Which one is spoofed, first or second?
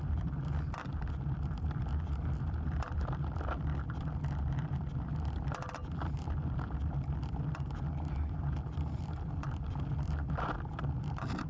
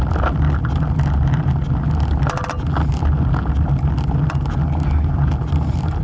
first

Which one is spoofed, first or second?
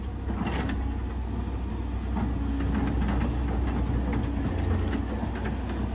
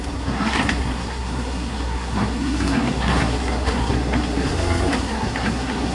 second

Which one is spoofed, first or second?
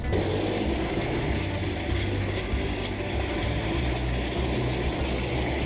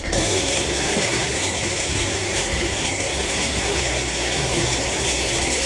second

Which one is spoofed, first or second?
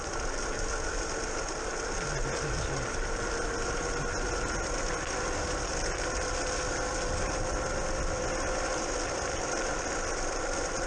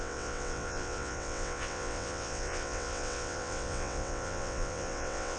second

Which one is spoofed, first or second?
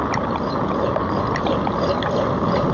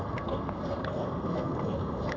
second